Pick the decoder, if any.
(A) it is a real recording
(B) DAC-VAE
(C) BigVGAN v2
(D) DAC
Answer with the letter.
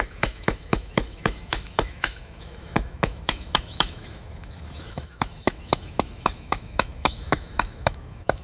B